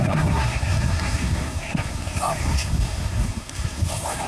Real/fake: fake